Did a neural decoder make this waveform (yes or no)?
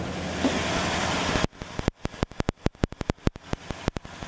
no